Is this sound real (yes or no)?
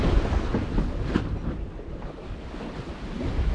yes